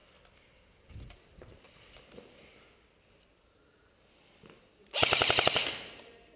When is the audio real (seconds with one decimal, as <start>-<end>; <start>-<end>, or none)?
0.0-6.4